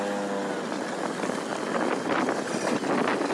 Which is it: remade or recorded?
recorded